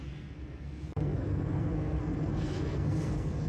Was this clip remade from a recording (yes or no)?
yes